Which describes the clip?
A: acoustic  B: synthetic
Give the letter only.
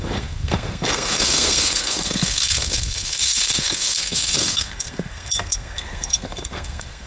B